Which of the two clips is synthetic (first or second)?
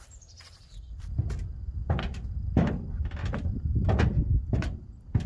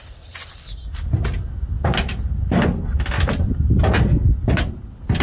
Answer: first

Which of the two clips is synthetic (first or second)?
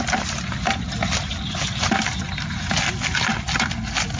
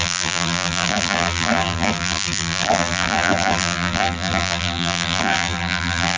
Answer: second